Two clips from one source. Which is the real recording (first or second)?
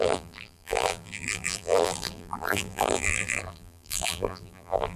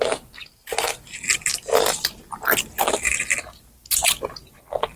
second